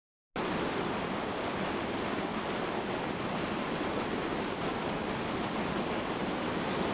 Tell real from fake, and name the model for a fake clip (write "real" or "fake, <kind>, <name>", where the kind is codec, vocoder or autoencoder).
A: real